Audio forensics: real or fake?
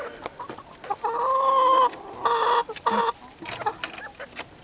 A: real